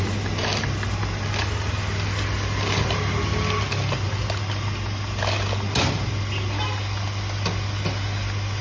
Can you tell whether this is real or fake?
real